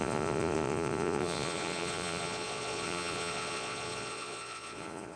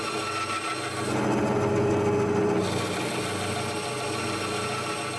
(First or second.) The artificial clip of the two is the first